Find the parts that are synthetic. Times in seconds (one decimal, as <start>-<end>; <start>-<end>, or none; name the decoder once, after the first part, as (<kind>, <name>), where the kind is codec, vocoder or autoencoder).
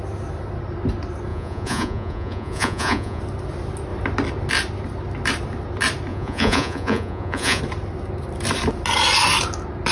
1.3-3.2 (vocoder, Vocos); 6.1-7.6